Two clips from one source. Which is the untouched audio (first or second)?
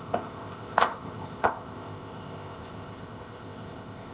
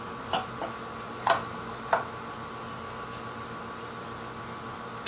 second